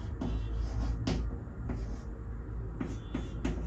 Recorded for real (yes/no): yes